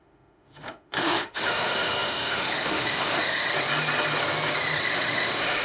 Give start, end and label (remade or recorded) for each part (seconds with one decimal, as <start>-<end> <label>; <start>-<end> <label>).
0.0-3.5 remade; 3.5-4.8 recorded; 4.8-5.6 remade